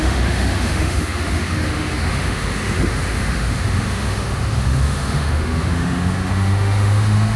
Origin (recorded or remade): remade